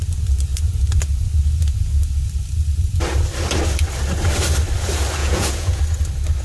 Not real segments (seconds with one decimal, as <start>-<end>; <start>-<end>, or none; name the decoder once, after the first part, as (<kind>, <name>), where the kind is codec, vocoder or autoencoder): 5.2-5.8 (vocoder, Vocos)